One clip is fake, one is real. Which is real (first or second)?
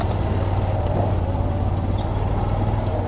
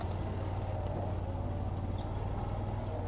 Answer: second